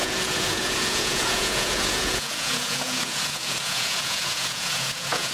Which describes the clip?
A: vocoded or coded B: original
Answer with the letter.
A